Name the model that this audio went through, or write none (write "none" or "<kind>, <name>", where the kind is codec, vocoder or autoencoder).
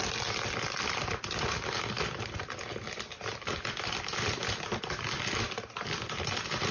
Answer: none